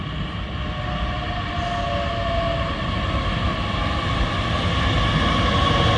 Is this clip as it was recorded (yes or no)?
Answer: yes